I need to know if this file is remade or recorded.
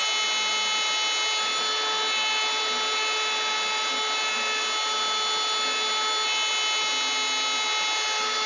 recorded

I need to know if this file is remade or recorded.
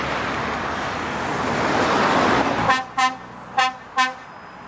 recorded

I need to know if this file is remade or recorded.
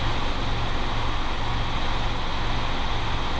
recorded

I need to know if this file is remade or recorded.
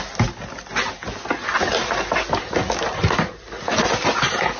recorded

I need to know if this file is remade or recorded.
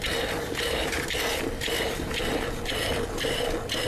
recorded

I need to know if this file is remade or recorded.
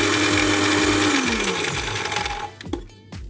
recorded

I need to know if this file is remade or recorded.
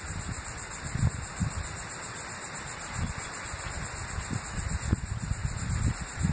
recorded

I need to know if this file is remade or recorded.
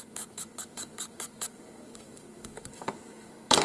remade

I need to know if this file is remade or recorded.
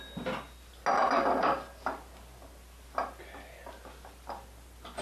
recorded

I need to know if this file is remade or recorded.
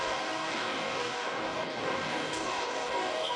remade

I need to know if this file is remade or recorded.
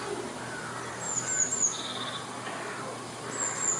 recorded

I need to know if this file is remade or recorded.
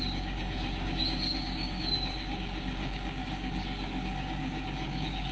remade